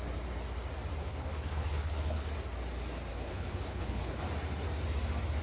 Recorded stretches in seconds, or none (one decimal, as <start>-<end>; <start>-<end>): 0.0-1.0; 2.3-3.1; 4.2-5.4